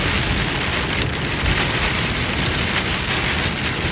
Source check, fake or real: real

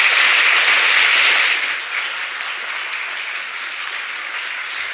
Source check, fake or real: real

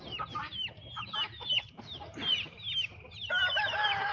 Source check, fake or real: real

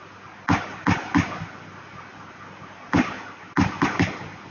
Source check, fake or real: real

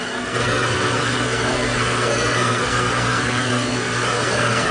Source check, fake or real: fake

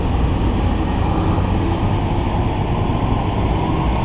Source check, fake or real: real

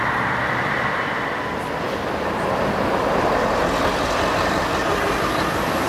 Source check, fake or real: real